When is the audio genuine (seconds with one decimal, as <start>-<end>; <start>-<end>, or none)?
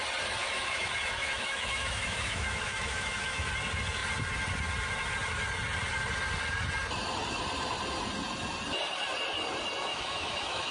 0.0-0.4; 3.5-9.9